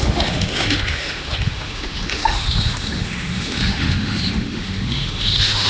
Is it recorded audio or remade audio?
remade